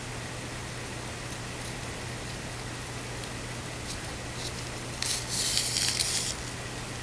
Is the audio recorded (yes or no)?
yes